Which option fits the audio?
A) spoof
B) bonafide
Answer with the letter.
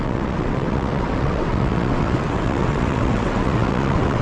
A